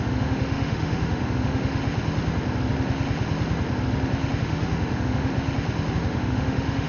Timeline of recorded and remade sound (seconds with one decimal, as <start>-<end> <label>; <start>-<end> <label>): 0.0-1.8 remade; 1.8-4.4 recorded; 4.4-5.3 remade; 5.3-5.9 recorded; 5.9-6.9 remade